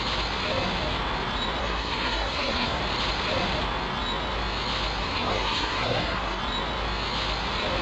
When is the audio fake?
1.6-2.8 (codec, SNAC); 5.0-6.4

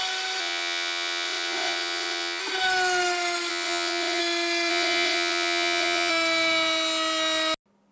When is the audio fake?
0.4-2.4 (vocoder, WaveNeXt); 3.5-4.2; 4.7-6.1

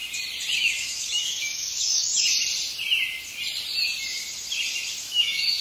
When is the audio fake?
0.6-2.1 (autoencoder, DAC-VAE); 5.0-5.6

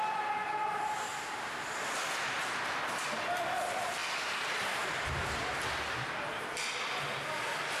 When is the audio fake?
none

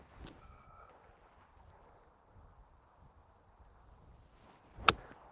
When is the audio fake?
0.4-0.9 (codec, SNAC)